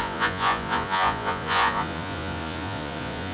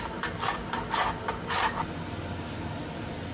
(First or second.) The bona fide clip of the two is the second